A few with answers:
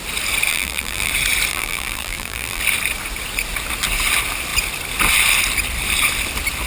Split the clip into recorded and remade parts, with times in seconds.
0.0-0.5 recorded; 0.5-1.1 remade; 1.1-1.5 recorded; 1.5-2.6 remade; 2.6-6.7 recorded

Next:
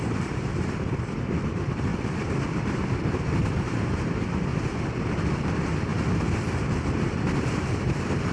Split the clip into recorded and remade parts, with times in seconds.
0.0-0.5 remade; 0.5-1.5 recorded; 1.5-4.5 remade; 4.5-5.4 recorded; 5.4-5.9 remade; 5.9-6.5 recorded; 6.5-8.3 remade

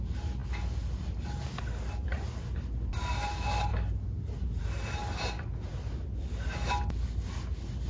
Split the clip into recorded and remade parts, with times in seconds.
0.0-7.9 recorded

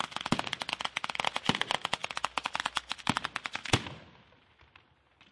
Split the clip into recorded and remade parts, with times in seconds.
0.0-5.3 recorded

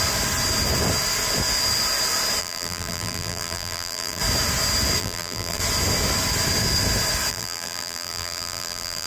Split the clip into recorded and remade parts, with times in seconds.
0.0-2.4 recorded; 2.4-4.2 remade; 4.2-5.0 recorded; 5.0-5.6 remade; 5.6-7.3 recorded; 7.3-9.1 remade